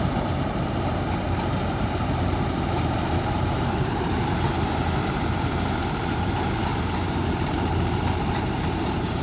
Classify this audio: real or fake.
fake